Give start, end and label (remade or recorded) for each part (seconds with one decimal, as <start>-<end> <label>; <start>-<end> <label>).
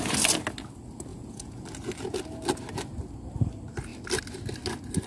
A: 0.0-1.1 recorded; 1.1-1.6 remade; 1.6-5.1 recorded